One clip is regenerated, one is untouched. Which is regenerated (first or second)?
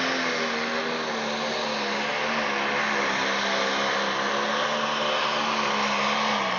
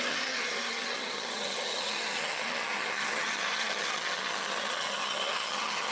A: second